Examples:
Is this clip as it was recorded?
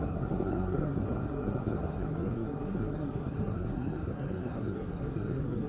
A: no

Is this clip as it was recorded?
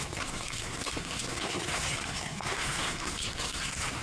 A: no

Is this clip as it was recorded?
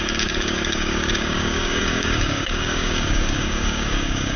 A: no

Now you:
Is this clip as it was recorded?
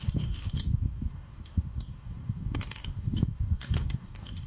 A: no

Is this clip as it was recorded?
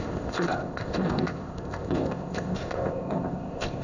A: no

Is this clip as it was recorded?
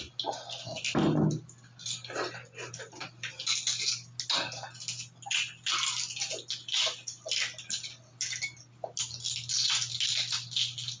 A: yes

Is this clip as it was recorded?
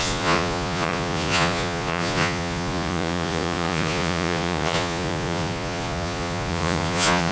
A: no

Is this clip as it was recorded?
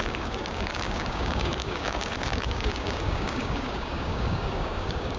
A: no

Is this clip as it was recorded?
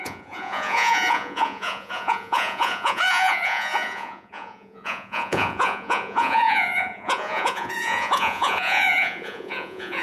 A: no